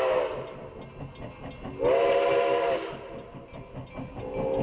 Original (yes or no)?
yes